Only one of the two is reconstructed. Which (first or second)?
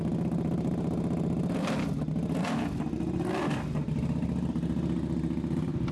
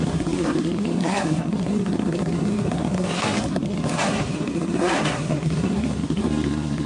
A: second